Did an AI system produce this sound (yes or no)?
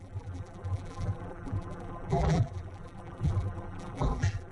yes